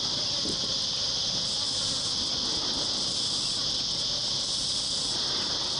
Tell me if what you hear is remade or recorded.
recorded